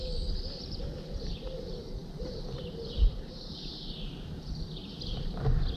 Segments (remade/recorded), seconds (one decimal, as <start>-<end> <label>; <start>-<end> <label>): 0.0-2.0 recorded; 2.0-3.5 remade; 3.5-4.8 recorded; 4.8-5.8 remade